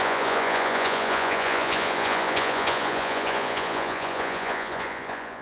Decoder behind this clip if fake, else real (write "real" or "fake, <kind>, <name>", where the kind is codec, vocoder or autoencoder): fake, vocoder, Vocos